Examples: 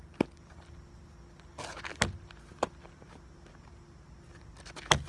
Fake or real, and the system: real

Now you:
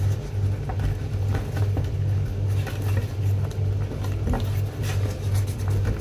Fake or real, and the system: real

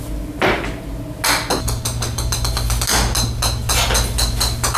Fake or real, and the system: real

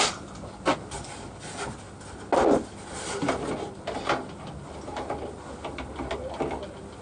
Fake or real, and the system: real